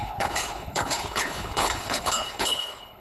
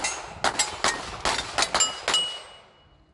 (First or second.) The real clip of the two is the second